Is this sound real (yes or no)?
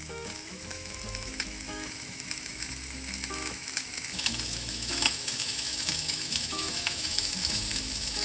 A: no